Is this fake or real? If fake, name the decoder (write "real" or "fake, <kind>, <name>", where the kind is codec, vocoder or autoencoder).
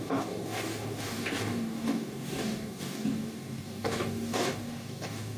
fake, codec, DAC